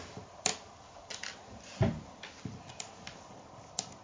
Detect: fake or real real